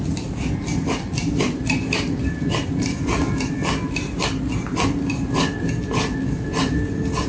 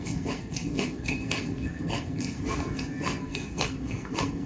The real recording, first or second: first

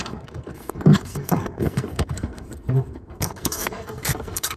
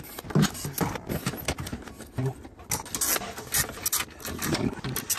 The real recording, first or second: second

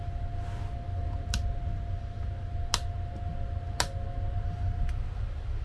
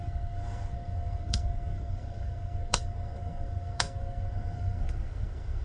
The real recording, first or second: first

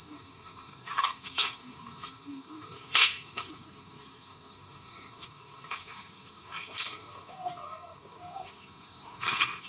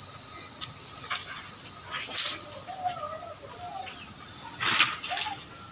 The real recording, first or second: second